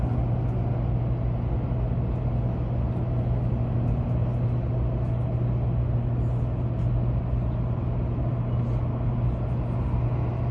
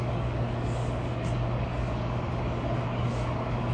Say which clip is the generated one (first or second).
second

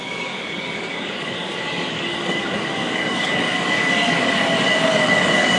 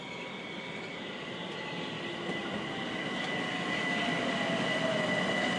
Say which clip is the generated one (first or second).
first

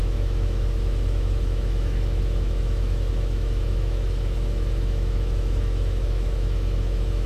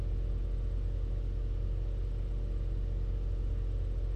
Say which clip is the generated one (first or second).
first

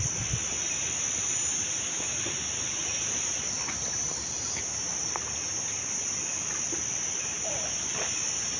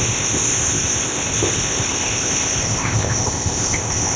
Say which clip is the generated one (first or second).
second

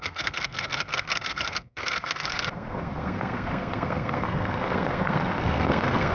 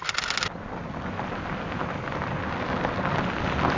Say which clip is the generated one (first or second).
first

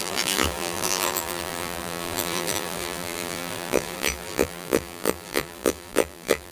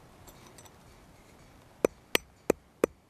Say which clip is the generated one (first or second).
first